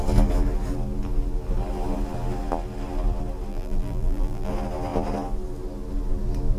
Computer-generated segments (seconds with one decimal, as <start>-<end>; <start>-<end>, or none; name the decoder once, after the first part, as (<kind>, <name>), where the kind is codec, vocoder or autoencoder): 3.5-4.5 (vocoder, BigVGAN v2)